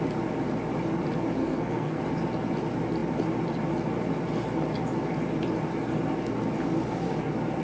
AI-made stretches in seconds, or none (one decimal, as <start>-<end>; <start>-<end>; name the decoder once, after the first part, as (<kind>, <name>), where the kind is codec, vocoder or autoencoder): 1.4-2.0 (codec, SNAC)